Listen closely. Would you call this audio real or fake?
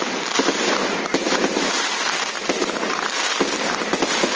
real